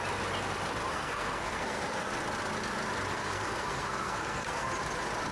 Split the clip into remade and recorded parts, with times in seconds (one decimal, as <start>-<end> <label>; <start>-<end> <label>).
0.0-0.9 recorded; 0.9-2.1 remade; 2.1-3.1 recorded; 3.1-4.7 remade; 4.7-5.3 recorded